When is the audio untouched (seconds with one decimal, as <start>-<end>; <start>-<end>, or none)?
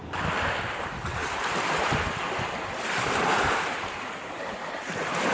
0.0-5.3